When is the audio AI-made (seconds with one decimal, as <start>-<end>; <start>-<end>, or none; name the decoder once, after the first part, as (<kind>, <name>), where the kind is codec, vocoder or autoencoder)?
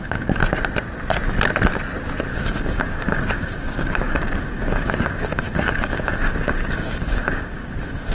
0.0-0.4 (codec, DAC); 2.3-8.1